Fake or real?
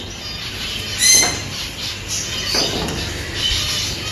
real